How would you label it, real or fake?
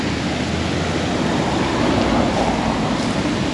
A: real